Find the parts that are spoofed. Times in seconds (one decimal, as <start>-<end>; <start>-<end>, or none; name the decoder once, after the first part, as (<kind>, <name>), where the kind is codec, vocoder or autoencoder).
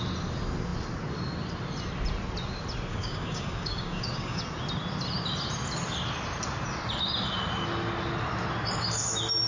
2.9-4.4 (codec, DAC)